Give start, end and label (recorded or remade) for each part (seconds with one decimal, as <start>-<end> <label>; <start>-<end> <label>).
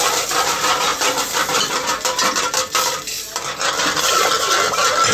0.0-5.1 recorded